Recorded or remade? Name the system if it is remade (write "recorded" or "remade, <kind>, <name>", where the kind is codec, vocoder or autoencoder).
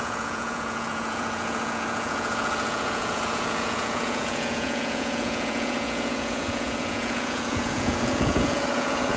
remade, vocoder, Vocos